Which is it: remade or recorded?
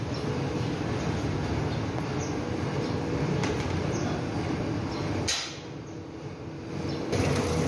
recorded